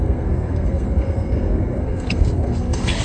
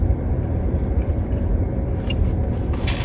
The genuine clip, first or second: second